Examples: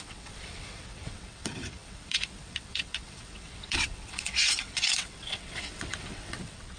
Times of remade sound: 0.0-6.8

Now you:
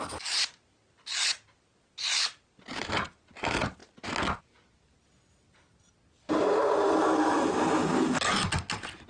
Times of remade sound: none